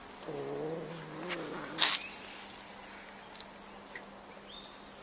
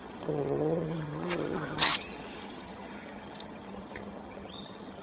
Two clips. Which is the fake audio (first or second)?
second